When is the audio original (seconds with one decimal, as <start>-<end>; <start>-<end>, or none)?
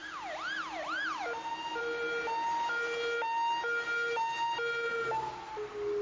0.0-6.0